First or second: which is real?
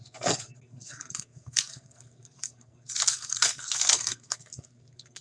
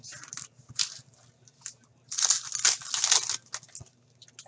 second